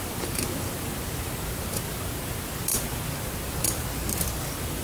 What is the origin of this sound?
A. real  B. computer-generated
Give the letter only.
A